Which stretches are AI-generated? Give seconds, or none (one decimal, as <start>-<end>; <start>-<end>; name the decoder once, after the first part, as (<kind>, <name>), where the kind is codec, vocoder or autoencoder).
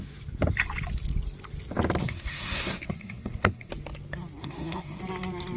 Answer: 2.0-3.7 (codec, SNAC); 4.4-5.0